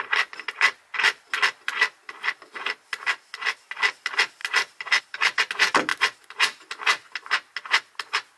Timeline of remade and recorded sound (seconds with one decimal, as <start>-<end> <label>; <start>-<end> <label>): 0.0-8.4 recorded